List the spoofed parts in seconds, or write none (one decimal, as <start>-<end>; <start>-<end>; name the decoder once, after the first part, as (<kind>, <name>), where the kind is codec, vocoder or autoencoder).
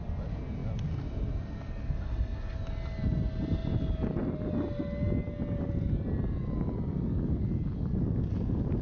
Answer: none